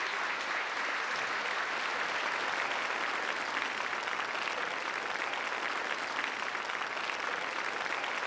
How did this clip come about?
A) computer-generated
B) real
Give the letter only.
B